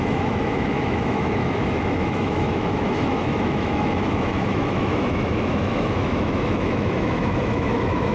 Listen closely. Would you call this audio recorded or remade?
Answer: remade